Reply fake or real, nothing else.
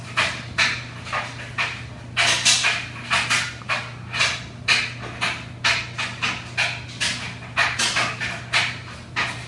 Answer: real